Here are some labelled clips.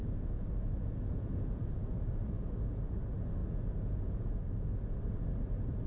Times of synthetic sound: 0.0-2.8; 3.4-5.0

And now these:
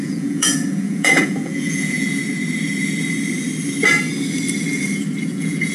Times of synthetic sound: 0.0-2.2; 5.3-5.7

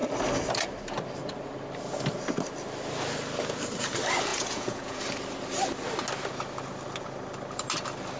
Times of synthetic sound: 4.3-5.0